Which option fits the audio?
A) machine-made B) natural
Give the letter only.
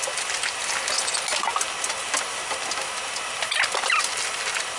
B